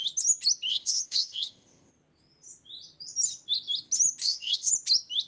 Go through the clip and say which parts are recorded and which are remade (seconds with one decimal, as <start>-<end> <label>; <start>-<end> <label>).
0.0-0.7 recorded; 0.7-1.9 remade; 1.9-4.2 recorded; 4.2-4.7 remade; 4.7-5.3 recorded